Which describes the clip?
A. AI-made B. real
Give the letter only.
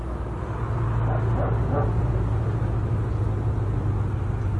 B